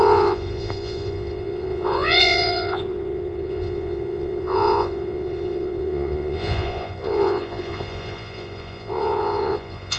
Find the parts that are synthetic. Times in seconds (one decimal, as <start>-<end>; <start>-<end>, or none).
0.0-10.0